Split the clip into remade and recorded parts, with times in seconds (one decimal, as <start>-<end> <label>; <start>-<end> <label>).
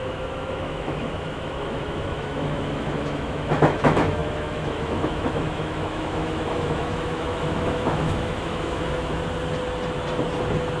0.0-9.2 remade; 9.2-10.8 recorded